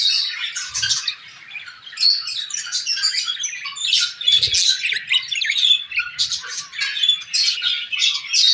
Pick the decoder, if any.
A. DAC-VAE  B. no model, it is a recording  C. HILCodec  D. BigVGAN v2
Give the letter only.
B